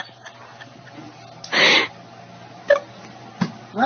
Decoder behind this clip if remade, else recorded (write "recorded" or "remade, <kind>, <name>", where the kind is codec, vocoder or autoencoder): recorded